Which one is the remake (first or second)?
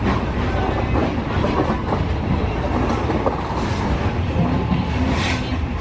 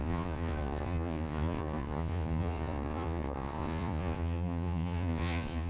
second